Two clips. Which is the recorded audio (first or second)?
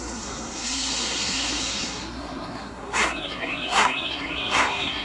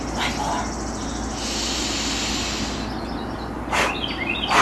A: second